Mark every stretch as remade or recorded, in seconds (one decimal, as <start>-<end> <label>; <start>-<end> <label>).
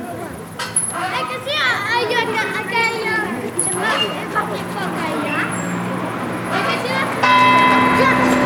0.0-2.8 recorded; 2.8-4.4 remade; 4.4-5.1 recorded; 5.1-6.0 remade; 6.0-8.5 recorded